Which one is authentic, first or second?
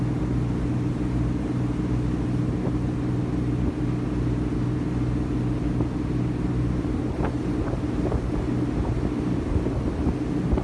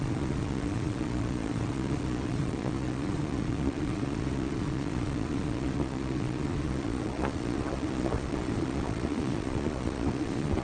first